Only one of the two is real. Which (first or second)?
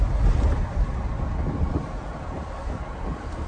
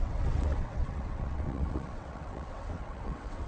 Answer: first